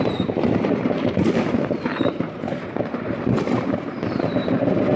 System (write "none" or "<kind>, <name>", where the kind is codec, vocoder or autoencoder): vocoder, BigVGAN v2